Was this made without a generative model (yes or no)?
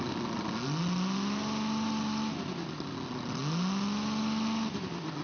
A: yes